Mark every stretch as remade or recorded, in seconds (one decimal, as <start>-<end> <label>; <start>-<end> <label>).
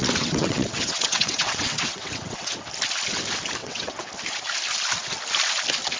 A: 0.0-2.6 remade; 2.6-3.6 recorded; 3.6-4.1 remade; 4.1-6.0 recorded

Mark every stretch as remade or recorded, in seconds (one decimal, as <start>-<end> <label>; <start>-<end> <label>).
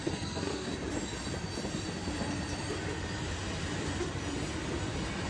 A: 0.0-0.7 remade; 0.7-5.3 recorded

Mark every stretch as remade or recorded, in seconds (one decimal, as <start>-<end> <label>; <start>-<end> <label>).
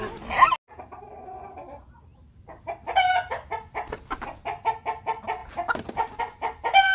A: 0.0-6.9 recorded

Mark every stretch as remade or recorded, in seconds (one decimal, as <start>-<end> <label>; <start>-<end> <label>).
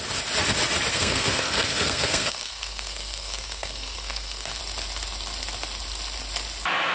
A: 0.0-0.9 recorded; 0.9-4.6 remade; 4.6-6.9 recorded